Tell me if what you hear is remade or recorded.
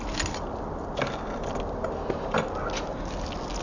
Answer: recorded